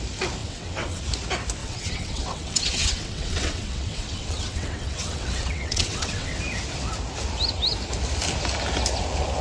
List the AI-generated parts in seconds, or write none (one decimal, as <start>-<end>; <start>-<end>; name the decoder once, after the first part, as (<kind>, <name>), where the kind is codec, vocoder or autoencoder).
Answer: 0.4-1.0 (vocoder, WaveNeXt); 1.6-6.4